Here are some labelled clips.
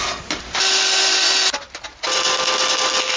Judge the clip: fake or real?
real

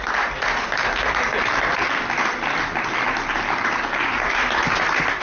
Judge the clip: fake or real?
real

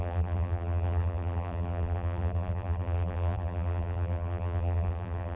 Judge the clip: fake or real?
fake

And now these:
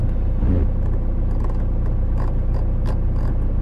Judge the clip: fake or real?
real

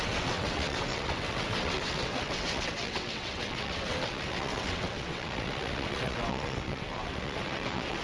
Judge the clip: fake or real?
fake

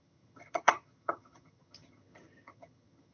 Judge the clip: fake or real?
fake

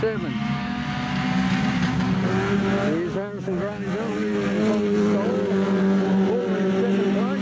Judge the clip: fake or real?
real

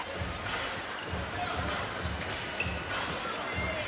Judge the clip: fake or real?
real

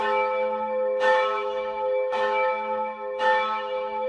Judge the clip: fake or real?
fake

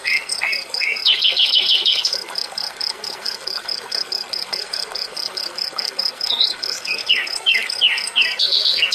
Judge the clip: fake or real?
fake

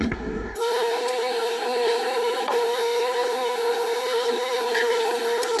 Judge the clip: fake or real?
fake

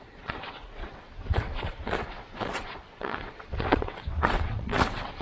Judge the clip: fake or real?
fake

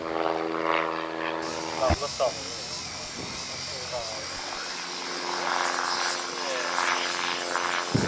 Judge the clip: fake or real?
real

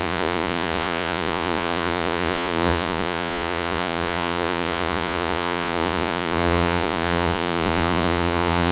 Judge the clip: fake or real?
fake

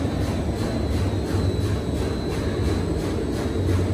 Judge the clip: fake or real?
real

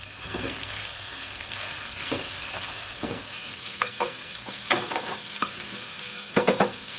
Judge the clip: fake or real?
fake